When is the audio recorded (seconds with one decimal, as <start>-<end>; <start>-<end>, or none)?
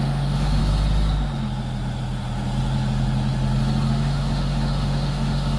0.6-3.9